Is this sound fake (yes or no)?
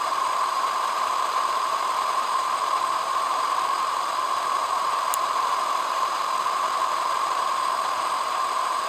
yes